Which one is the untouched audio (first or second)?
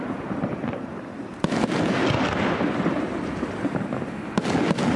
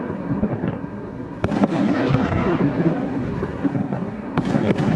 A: first